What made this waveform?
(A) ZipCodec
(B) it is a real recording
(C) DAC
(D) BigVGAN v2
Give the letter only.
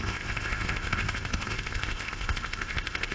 A